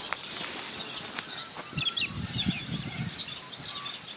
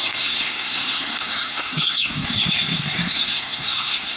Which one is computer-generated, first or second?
second